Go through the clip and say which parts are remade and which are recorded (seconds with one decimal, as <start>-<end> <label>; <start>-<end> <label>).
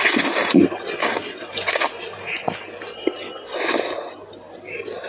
0.0-5.1 recorded